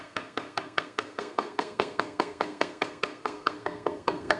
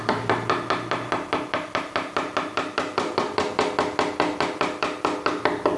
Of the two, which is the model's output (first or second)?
first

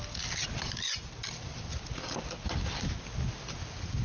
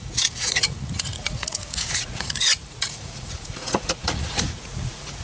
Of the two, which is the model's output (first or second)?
second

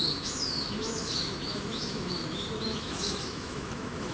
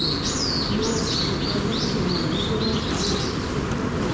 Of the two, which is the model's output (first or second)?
first